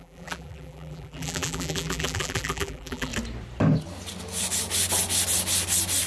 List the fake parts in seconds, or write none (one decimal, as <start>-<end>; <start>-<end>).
0.0-3.1